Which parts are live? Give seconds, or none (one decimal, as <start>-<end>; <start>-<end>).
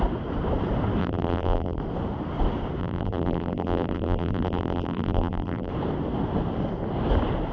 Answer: 0.0-1.0; 1.8-2.8; 5.7-7.5